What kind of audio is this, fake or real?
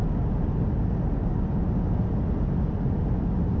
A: real